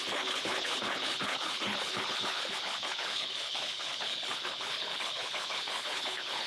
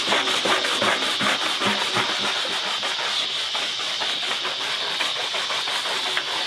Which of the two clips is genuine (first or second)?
second